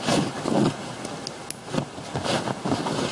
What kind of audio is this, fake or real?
real